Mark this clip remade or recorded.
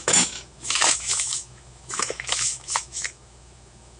remade